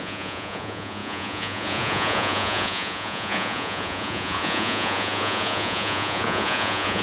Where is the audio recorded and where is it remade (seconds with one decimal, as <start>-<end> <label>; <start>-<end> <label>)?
0.0-7.0 remade